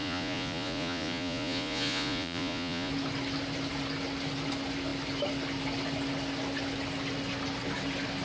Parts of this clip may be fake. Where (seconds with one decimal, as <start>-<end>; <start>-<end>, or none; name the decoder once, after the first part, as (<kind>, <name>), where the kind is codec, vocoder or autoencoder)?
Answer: 0.0-2.9 (vocoder, Vocos)